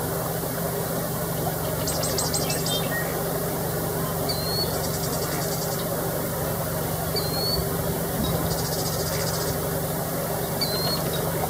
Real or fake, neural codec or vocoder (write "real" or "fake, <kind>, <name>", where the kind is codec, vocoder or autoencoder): real